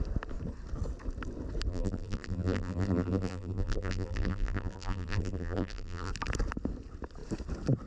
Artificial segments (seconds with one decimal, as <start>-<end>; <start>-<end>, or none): 1.7-6.1